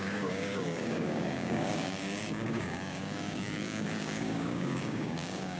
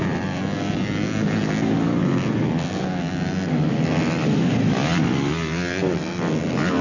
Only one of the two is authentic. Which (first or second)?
second